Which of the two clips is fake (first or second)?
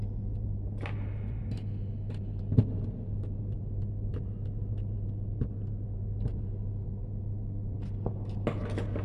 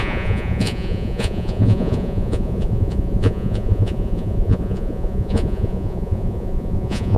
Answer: second